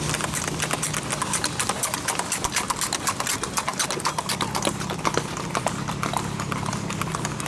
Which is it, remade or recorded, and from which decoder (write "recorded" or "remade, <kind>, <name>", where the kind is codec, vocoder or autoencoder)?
recorded